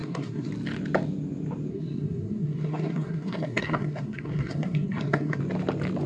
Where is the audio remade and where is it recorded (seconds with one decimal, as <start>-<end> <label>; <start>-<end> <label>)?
0.0-0.5 remade; 0.5-1.7 recorded; 1.7-5.4 remade; 5.4-6.1 recorded